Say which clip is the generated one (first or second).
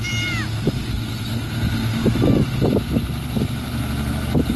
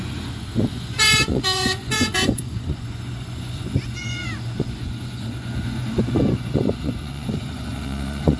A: second